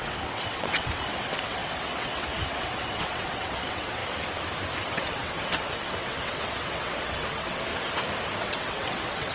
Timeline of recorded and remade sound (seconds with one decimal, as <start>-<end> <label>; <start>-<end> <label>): 0.0-4.0 remade; 4.0-4.9 recorded; 4.9-7.7 remade; 7.7-8.4 recorded; 8.4-9.3 remade